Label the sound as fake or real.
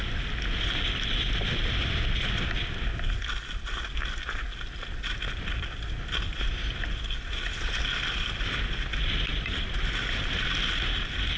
real